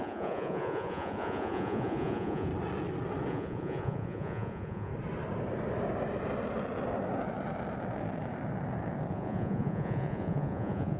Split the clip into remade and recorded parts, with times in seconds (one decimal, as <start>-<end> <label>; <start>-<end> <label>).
0.0-2.5 remade; 2.5-3.3 recorded; 3.3-4.9 remade; 4.9-9.1 recorded; 9.1-11.0 remade

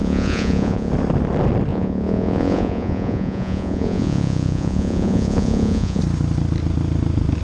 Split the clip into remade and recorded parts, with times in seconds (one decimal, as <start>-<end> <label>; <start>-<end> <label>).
0.0-0.9 remade; 0.9-1.7 recorded; 1.7-6.0 remade; 6.0-7.4 recorded

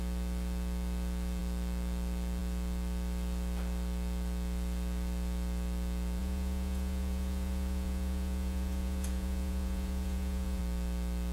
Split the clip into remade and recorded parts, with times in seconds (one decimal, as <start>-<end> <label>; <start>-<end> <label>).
0.0-6.2 recorded; 6.2-10.6 remade; 10.6-11.3 recorded

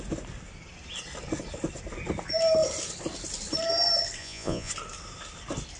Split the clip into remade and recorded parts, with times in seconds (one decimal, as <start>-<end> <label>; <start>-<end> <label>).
0.0-4.2 recorded; 4.2-4.7 remade; 4.7-5.8 recorded

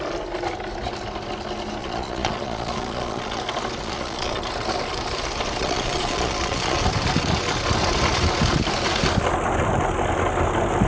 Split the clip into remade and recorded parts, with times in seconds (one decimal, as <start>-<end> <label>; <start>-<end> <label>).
0.0-1.8 recorded; 1.8-3.4 remade; 3.4-3.8 recorded; 3.8-4.4 remade; 4.4-5.6 recorded; 5.6-6.8 remade; 6.8-10.9 recorded